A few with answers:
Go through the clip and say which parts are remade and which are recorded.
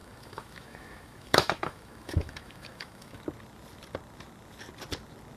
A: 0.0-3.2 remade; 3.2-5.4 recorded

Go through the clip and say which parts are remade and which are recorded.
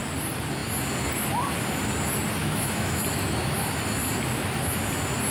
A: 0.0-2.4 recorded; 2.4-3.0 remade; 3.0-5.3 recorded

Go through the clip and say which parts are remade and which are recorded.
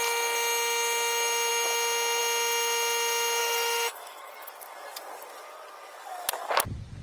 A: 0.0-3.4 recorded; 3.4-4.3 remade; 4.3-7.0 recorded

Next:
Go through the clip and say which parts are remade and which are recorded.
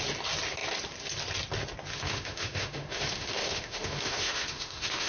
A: 0.0-1.9 recorded; 1.9-5.1 remade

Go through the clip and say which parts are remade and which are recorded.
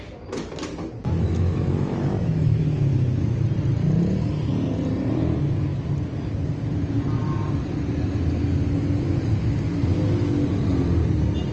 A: 0.0-1.0 recorded; 1.0-3.4 remade; 3.4-11.5 recorded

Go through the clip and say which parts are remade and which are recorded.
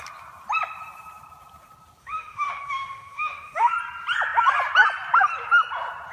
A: 0.0-2.0 recorded; 2.0-3.7 remade; 3.7-6.1 recorded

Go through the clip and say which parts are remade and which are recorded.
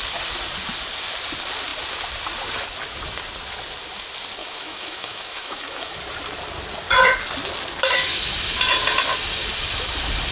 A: 0.0-4.4 recorded; 4.4-6.0 remade; 6.0-10.3 recorded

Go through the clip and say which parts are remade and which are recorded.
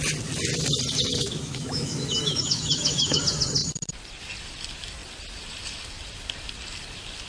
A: 0.0-1.1 recorded; 1.1-3.2 remade; 3.2-7.3 recorded